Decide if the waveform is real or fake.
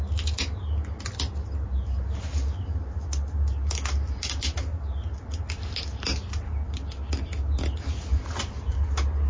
real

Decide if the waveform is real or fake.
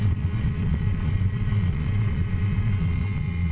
fake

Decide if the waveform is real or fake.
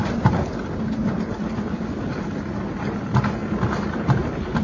real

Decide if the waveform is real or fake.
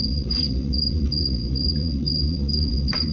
fake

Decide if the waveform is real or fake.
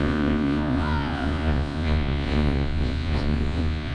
fake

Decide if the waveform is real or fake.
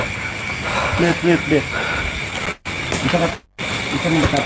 real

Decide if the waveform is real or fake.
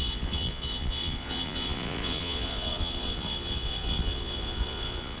fake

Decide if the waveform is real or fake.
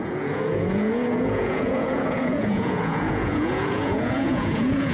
fake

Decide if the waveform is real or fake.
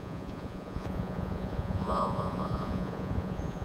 fake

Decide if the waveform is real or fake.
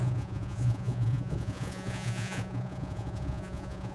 fake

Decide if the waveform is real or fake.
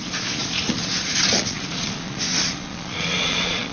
fake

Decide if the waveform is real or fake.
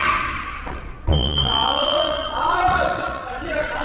fake